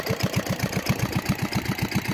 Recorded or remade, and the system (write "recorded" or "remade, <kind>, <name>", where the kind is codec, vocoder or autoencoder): recorded